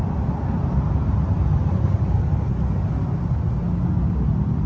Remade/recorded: recorded